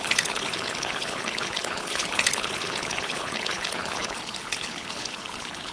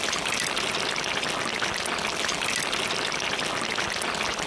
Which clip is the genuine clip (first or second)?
second